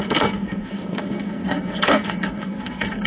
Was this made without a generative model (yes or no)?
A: no